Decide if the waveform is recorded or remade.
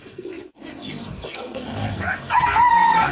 remade